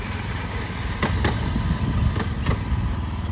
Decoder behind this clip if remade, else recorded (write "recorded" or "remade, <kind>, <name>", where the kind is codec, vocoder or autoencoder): recorded